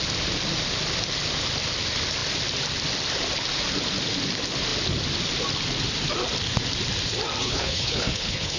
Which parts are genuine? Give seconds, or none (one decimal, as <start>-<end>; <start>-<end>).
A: 0.0-7.4